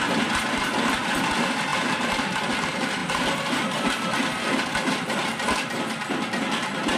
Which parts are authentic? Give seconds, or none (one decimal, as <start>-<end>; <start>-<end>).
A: 0.0-7.0